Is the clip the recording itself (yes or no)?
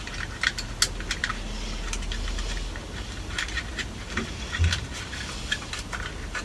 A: yes